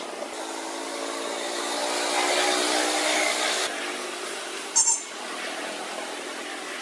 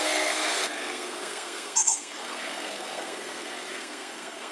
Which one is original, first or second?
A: first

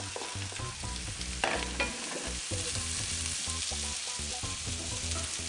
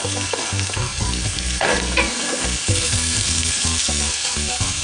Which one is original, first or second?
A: first